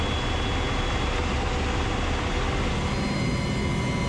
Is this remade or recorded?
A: recorded